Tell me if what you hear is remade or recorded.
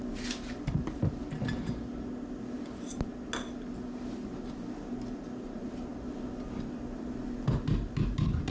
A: recorded